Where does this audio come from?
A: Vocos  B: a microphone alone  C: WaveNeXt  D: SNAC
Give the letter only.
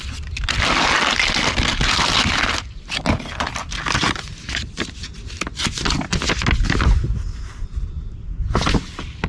B